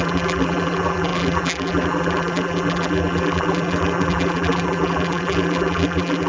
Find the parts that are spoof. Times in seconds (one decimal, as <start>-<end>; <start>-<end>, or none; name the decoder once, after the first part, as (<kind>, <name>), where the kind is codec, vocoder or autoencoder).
0.0-6.3 (vocoder, BigVGAN v2)